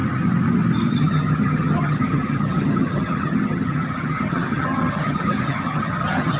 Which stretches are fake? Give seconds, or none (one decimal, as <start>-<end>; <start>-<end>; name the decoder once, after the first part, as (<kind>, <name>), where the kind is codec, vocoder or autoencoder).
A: 1.0-6.4 (vocoder, HiFi-GAN)